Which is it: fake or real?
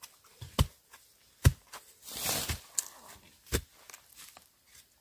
real